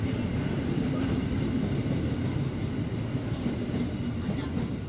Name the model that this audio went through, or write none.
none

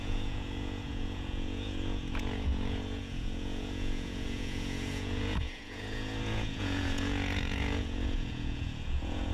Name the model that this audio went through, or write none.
vocoder, Vocos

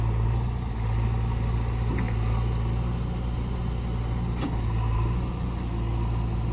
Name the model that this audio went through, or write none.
none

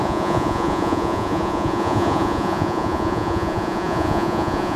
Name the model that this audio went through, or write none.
vocoder, Vocos